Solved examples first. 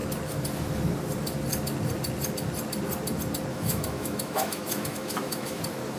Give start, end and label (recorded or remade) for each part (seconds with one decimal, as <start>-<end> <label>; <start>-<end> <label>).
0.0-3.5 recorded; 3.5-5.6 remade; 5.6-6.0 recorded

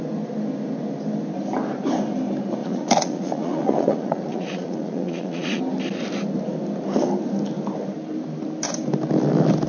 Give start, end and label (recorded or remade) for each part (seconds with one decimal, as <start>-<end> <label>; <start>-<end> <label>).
0.0-2.6 recorded; 2.6-5.6 remade; 5.6-9.7 recorded

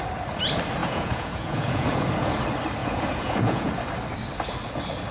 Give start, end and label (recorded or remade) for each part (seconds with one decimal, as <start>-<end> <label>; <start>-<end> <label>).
0.0-0.8 recorded; 0.8-2.3 remade; 2.3-2.8 recorded; 2.8-3.7 remade; 3.7-5.1 recorded